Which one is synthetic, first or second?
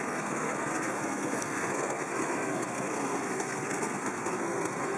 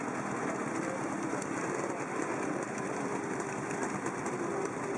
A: first